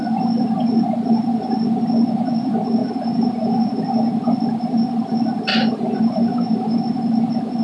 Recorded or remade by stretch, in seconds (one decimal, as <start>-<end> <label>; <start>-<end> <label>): 0.0-2.8 recorded; 2.8-3.7 remade; 3.7-5.5 recorded; 5.5-6.8 remade; 6.8-7.6 recorded